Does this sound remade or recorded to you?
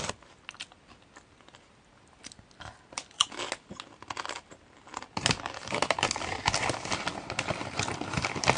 recorded